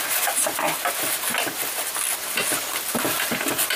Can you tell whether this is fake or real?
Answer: real